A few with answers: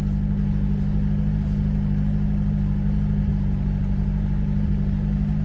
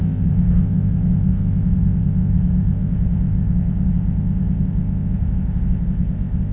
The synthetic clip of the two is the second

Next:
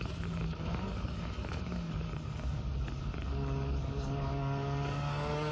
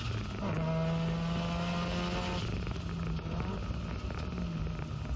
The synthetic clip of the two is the first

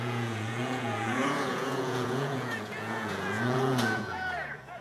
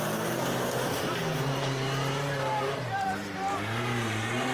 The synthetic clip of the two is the first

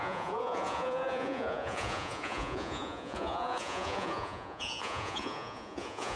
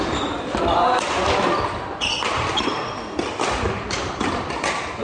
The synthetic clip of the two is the first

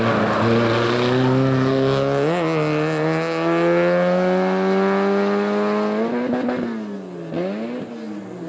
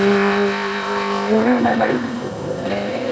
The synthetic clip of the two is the second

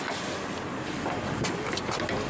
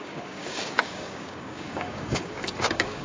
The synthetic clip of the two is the second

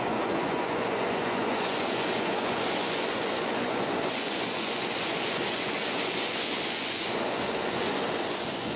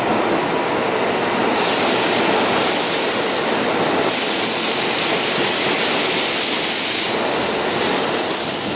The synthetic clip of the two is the first